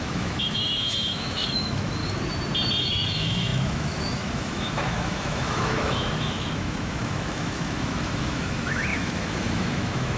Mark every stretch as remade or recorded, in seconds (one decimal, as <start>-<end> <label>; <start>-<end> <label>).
0.0-2.0 remade; 2.0-2.8 recorded; 2.8-10.2 remade